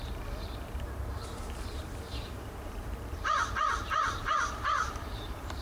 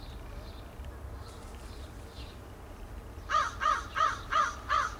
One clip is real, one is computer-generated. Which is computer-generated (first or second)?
first